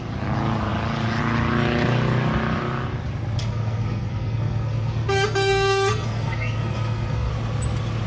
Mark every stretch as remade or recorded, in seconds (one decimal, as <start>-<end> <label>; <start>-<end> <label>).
0.0-3.4 recorded; 3.4-7.3 remade; 7.3-8.1 recorded